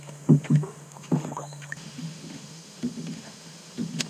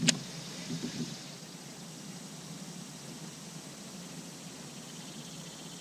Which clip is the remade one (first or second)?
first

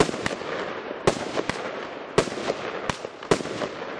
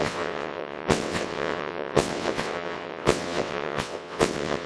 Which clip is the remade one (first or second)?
second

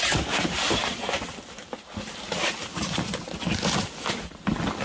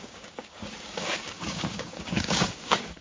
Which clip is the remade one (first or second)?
second